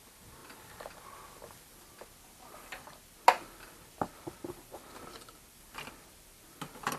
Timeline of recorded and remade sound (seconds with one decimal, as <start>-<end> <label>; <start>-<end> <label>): 0.0-0.4 remade; 0.4-1.9 recorded; 1.9-7.0 remade